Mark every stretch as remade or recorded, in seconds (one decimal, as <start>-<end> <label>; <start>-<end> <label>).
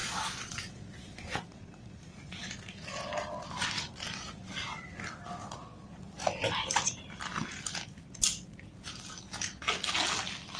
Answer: 0.0-2.5 remade; 2.5-5.4 recorded; 5.4-6.2 remade; 6.2-10.6 recorded